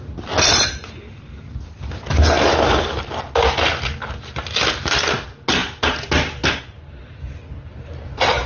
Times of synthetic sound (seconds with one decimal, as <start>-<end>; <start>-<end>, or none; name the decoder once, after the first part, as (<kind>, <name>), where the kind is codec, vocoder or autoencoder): none